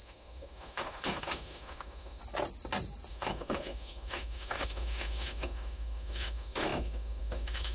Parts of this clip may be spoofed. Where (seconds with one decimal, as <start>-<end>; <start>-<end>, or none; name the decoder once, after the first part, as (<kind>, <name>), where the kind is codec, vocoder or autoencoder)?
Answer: 0.0-2.2 (autoencoder, DAC-VAE); 3.1-7.7